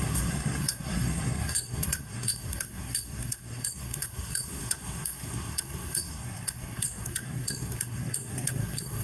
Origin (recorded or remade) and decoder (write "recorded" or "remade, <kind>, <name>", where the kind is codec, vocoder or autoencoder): remade, codec, SNAC